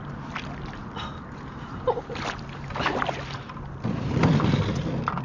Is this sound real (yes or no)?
yes